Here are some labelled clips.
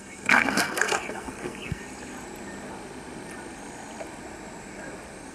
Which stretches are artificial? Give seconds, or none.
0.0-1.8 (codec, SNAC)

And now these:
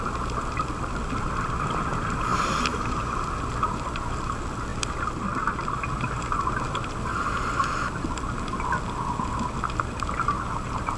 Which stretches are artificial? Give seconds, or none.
none